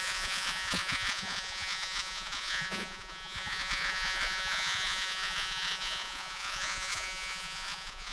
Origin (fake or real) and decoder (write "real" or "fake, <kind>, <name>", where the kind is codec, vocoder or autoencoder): fake, vocoder, Vocos